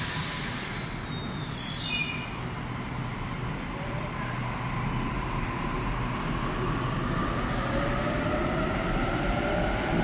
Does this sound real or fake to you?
real